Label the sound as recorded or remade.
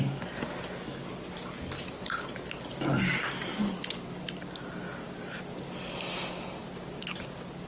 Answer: recorded